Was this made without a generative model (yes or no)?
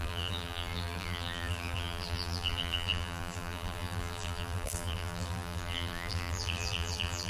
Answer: no